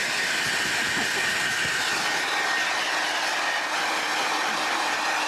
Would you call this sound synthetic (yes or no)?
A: no